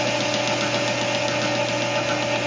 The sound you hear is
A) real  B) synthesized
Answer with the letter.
A